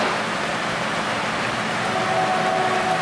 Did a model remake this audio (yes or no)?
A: no